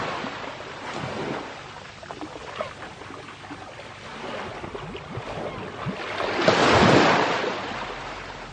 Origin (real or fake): real